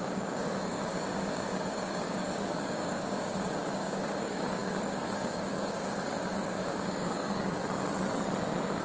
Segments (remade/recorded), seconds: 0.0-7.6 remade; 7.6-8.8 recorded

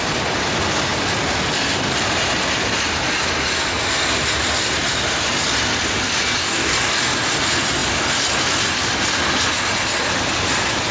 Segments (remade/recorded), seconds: 0.0-6.4 recorded; 6.4-7.0 remade; 7.0-10.9 recorded

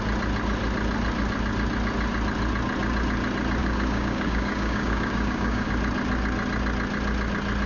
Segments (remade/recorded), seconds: 0.0-3.6 recorded; 3.6-5.7 remade; 5.7-7.7 recorded